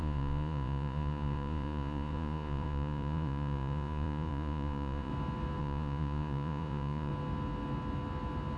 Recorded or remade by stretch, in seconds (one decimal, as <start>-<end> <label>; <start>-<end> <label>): 0.0-5.1 remade; 5.1-5.6 recorded; 5.6-7.1 remade; 7.1-8.6 recorded